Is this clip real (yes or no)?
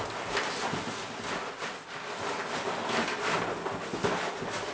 yes